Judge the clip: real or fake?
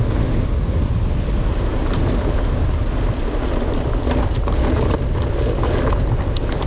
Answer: real